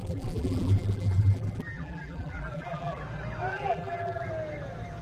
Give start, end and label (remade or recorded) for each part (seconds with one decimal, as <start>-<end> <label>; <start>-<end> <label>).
0.0-3.0 remade; 3.0-3.5 recorded; 3.5-4.3 remade; 4.3-5.0 recorded